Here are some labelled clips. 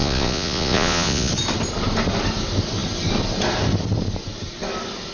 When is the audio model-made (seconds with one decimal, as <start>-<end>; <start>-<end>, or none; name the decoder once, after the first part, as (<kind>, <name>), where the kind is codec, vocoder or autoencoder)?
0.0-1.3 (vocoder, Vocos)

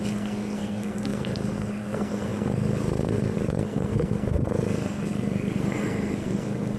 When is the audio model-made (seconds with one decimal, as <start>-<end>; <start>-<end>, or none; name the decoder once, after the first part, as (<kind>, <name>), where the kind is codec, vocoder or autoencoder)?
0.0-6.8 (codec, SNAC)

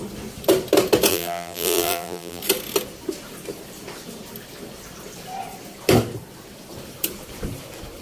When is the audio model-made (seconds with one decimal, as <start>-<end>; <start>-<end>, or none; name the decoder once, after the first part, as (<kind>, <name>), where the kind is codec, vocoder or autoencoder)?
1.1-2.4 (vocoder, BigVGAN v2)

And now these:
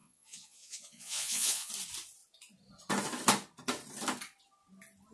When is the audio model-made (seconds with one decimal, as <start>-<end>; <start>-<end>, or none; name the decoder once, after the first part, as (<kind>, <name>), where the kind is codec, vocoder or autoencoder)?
0.0-1.7 (vocoder, Vocos)